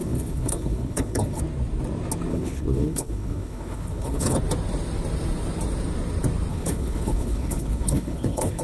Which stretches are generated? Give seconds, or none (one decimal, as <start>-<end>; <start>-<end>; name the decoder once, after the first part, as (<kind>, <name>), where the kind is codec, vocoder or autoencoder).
0.0-1.4 (codec, HILCodec); 2.3-4.4; 6.5-8.6